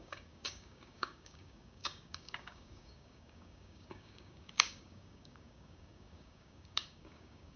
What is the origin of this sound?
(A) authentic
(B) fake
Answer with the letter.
B